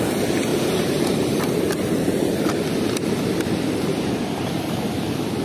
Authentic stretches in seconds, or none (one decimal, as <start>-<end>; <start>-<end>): 0.0-0.5; 2.7-3.9; 4.8-5.4